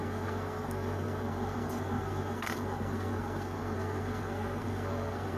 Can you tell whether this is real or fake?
fake